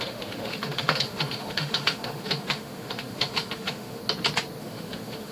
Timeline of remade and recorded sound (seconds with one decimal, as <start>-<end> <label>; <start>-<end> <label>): 0.0-4.0 remade; 4.0-4.6 recorded; 4.6-5.3 remade